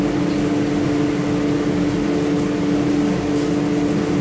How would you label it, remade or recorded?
recorded